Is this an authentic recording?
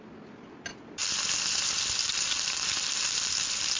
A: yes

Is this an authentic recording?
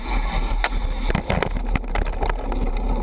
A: yes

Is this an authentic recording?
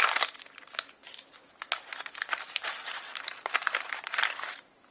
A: yes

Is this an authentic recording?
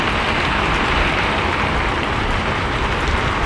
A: no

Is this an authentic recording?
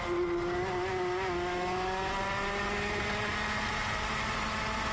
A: yes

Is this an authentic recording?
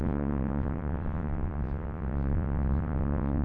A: no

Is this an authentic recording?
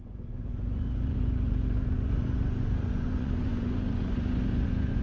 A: no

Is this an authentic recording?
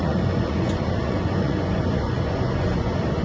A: no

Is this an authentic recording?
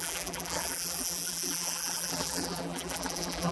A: no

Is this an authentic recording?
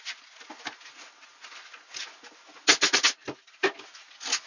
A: yes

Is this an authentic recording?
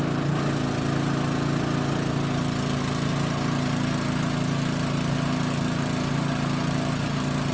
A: yes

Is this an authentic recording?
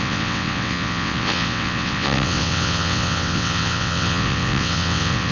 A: no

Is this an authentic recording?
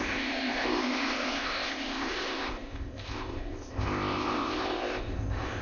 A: no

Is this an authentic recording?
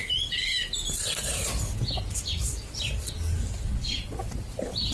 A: yes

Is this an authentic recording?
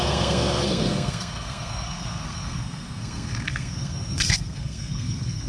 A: no